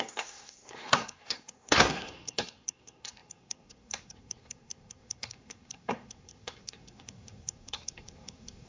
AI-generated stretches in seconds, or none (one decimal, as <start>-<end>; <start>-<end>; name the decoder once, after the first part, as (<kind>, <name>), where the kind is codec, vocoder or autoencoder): 0.0-8.7 (codec, SNAC)